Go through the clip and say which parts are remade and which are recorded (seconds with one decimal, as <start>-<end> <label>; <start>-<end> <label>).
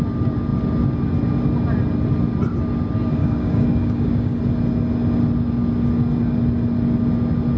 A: 0.0-3.2 recorded; 3.2-4.4 remade; 4.4-7.6 recorded